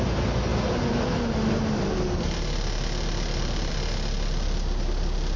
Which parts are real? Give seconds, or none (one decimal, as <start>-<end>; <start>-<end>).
0.0-5.4